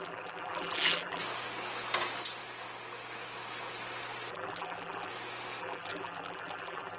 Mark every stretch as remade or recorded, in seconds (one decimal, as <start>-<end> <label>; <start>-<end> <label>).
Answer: 0.0-1.2 remade; 1.2-4.3 recorded; 4.3-5.1 remade; 5.1-5.6 recorded; 5.6-7.0 remade